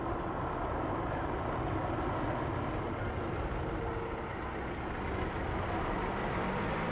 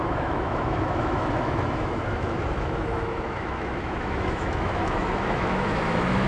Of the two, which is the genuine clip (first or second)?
first